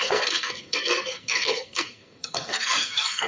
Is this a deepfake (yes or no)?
yes